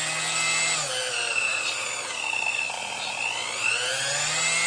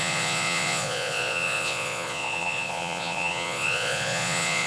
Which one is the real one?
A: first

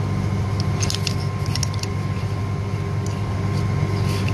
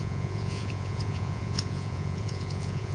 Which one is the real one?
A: first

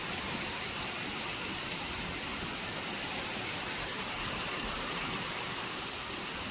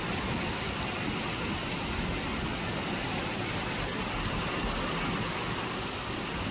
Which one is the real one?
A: second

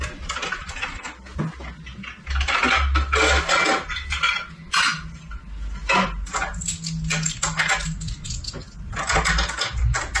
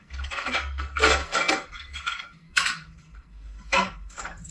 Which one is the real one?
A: first